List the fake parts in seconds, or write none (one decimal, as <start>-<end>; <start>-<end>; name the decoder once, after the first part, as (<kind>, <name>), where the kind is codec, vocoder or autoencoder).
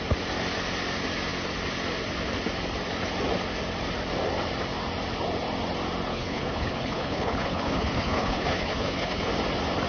6.1-9.3 (codec, HILCodec)